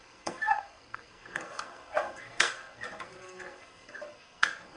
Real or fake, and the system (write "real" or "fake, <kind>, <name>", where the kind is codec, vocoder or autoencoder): fake, codec, SNAC